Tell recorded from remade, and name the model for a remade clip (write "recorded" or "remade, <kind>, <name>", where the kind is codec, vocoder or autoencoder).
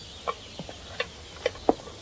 recorded